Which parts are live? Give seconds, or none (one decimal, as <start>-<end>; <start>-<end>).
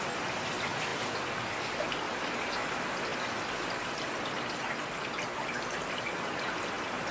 0.0-7.1